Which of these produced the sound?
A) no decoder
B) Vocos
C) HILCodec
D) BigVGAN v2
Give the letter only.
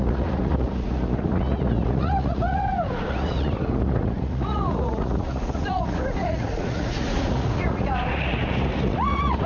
B